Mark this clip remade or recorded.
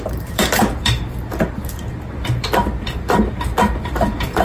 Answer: remade